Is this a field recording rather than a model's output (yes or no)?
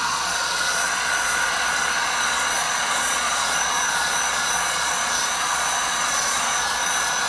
no